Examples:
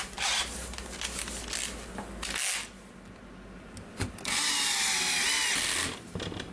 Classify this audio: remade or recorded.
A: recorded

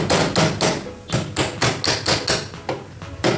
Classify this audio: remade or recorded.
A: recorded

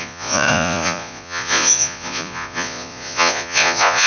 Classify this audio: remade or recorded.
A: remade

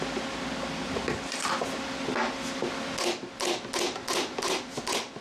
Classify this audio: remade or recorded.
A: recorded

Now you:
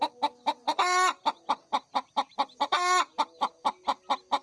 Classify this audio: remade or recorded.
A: recorded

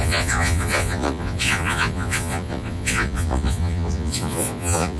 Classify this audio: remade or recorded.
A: remade